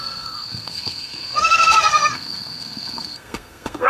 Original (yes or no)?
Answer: no